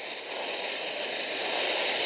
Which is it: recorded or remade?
recorded